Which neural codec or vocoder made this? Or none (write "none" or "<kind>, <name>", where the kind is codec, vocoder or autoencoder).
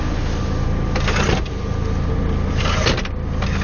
none